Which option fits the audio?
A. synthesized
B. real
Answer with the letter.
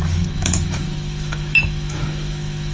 A